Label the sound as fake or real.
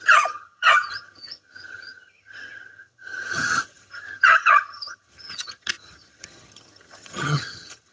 fake